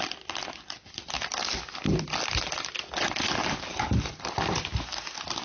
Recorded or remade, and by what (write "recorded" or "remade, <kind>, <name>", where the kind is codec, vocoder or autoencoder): recorded